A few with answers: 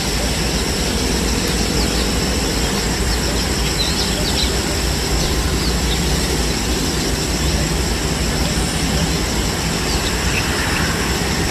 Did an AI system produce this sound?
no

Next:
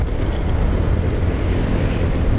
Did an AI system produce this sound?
no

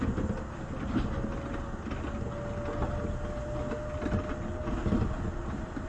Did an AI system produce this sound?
no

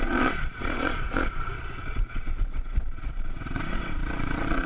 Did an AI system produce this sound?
yes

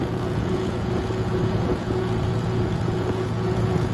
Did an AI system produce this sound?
yes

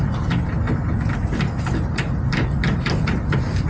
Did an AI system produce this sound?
no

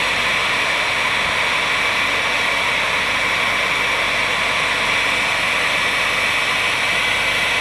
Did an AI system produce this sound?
no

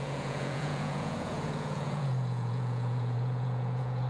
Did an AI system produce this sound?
yes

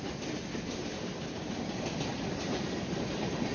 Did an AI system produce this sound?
no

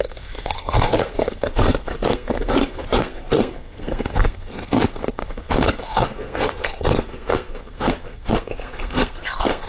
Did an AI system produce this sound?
yes